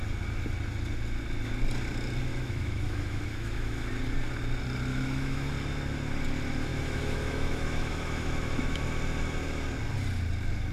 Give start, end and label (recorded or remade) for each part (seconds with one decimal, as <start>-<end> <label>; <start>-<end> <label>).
0.0-2.3 recorded; 2.3-3.9 remade; 3.9-4.9 recorded; 4.9-5.5 remade; 5.5-6.7 recorded; 6.7-8.8 remade; 8.8-10.7 recorded